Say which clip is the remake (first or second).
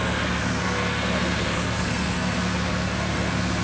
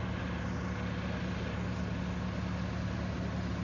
first